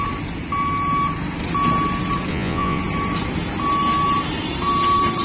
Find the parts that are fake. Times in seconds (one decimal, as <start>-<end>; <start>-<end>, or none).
2.3-2.8